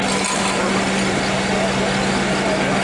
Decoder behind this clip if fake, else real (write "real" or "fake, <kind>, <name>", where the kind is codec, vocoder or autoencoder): real